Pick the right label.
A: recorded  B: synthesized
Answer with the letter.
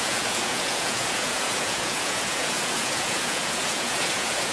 B